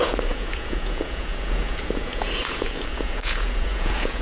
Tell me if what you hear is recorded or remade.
remade